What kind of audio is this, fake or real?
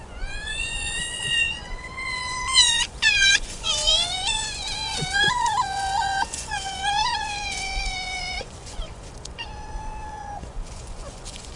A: fake